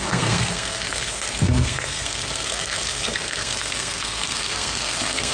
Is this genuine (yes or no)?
no